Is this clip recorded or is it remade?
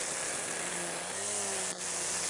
recorded